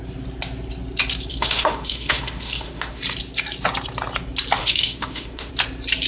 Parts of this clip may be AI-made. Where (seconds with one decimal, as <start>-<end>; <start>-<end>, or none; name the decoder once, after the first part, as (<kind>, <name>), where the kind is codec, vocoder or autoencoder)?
1.3-3.0 (autoencoder, DAC-VAE); 4.6-5.5